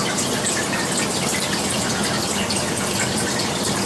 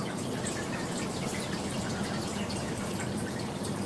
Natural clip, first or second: first